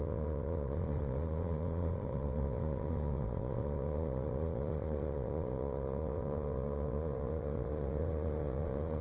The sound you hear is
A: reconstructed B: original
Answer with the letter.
A